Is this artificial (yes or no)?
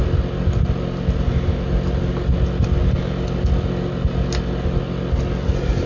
no